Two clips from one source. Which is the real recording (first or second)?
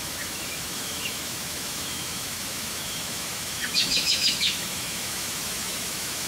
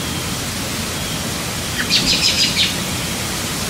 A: second